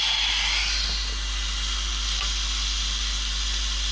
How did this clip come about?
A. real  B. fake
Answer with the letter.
A